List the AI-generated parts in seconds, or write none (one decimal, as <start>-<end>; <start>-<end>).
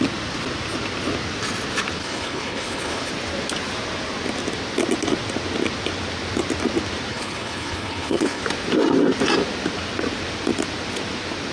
2.0-3.1; 7.1-8.4